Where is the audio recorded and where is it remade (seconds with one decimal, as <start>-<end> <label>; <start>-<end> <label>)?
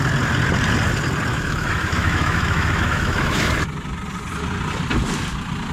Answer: 0.0-1.3 recorded; 1.3-3.5 remade; 3.5-5.7 recorded